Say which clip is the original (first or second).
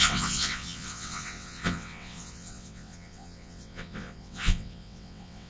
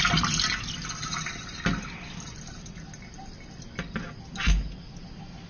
second